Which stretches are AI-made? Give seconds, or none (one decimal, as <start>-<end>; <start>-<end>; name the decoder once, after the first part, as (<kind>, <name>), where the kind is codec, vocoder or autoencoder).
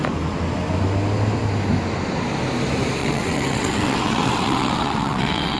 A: 3.0-5.6 (vocoder, WaveNeXt)